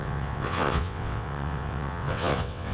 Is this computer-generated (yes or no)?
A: yes